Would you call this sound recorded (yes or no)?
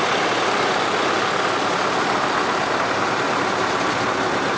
yes